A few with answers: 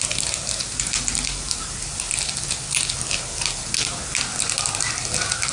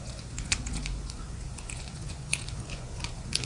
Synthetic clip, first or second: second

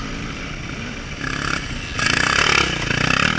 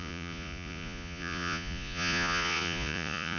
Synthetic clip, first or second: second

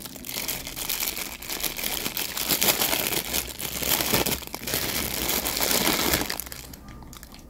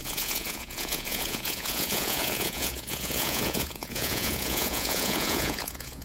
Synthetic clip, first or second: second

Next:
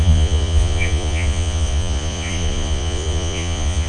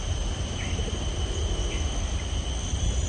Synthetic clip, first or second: first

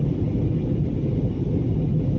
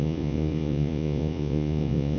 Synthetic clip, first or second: second